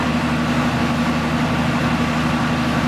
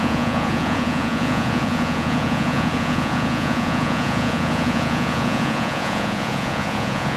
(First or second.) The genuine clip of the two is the first